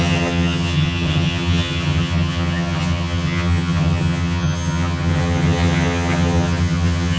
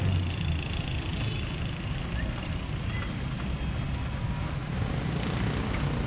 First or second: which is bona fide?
second